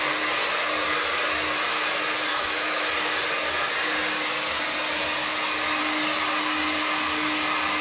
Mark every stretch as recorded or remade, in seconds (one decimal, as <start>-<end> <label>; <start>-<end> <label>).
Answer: 0.0-2.3 recorded; 2.3-2.9 remade; 2.9-7.8 recorded